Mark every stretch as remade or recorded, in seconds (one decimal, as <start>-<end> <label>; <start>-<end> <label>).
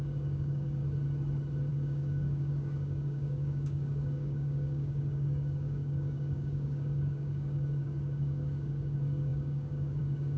0.0-0.8 remade; 0.8-1.7 recorded; 1.7-10.4 remade